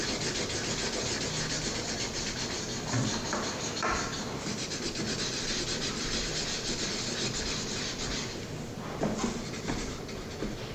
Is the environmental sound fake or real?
real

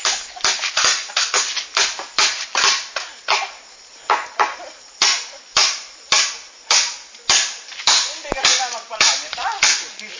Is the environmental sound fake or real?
real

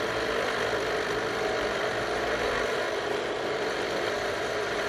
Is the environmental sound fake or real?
real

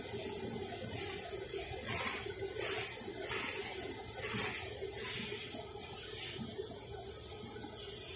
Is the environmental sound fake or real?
real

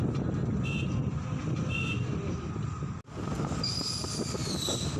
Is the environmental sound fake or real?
real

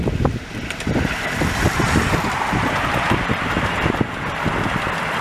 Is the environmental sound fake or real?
real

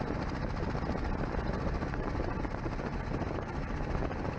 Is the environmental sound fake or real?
real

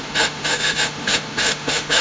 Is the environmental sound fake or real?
fake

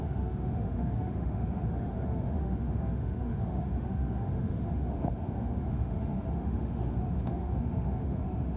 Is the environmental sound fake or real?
fake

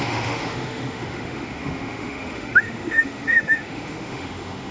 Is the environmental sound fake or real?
fake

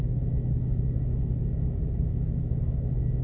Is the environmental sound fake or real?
fake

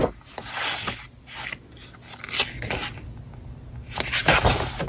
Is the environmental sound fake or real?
real